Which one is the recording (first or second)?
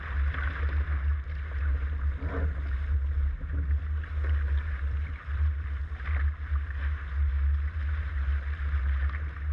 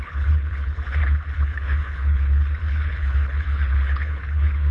first